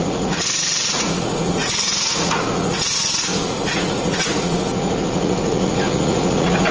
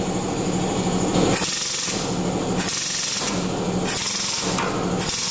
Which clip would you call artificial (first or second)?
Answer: first